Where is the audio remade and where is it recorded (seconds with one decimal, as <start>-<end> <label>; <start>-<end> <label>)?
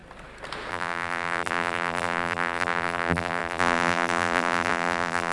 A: 0.0-0.7 recorded; 0.7-5.3 remade